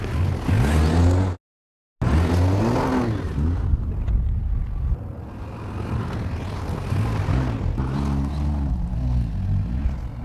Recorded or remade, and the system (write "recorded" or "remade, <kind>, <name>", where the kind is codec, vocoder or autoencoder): recorded